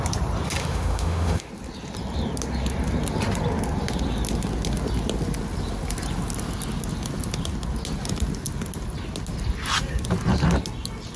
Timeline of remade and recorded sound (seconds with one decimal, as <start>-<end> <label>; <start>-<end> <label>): 0.0-0.6 recorded; 0.6-1.5 remade; 1.5-11.2 recorded